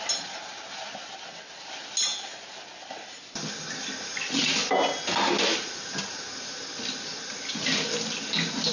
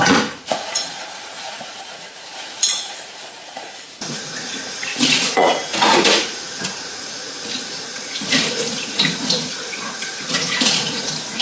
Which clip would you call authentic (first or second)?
first